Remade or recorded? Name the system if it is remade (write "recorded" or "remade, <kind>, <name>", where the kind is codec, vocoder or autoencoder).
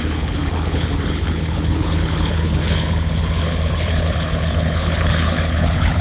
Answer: remade, codec, HILCodec